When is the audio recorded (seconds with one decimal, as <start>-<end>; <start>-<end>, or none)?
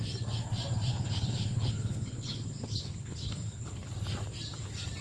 0.0-0.9; 3.9-5.0